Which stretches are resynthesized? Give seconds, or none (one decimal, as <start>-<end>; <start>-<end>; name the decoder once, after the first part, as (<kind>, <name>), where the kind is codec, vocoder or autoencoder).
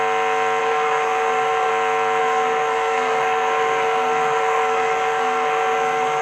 0.6-1.7 (codec, SNAC); 2.2-6.2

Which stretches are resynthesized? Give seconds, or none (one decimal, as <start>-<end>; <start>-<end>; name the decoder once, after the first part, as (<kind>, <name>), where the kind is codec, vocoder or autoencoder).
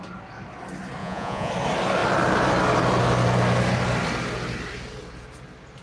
1.0-1.5 (vocoder, Vocos)